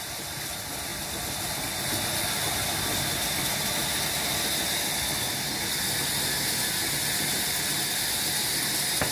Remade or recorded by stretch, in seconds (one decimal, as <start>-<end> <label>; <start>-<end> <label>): 0.0-9.1 recorded